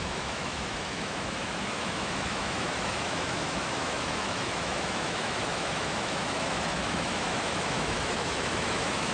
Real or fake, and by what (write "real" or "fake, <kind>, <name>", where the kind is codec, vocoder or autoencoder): fake, autoencoder, DAC-VAE